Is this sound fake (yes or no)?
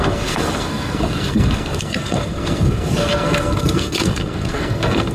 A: yes